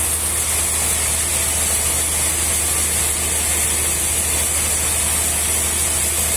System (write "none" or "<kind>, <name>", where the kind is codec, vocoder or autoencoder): none